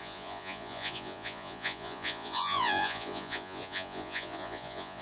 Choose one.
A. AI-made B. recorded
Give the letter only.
A